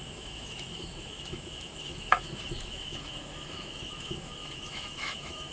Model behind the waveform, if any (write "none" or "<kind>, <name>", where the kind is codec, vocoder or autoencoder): autoencoder, DAC-VAE